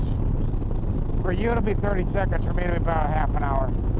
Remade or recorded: recorded